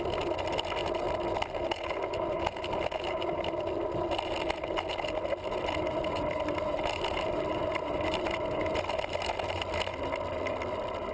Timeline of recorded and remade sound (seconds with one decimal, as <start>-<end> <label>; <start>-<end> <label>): 0.0-11.1 recorded